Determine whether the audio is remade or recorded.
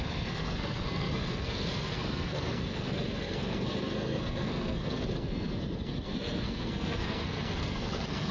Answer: remade